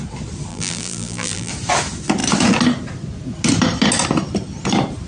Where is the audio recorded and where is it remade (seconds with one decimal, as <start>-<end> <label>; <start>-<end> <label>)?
0.0-0.5 recorded; 0.5-1.5 remade; 1.5-5.1 recorded